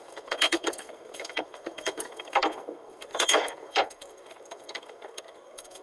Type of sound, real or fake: fake